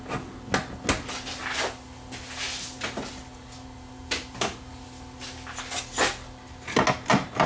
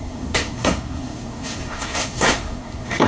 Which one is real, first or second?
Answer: first